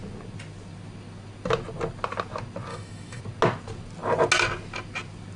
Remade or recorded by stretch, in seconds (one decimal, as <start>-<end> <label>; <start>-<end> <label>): 0.0-2.7 recorded; 2.7-3.2 remade; 3.2-5.4 recorded